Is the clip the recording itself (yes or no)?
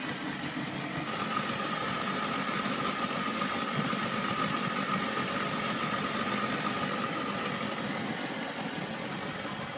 yes